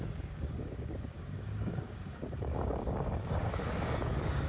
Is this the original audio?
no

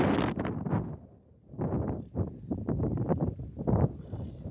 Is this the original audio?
yes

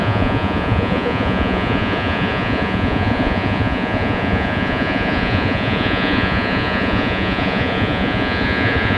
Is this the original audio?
no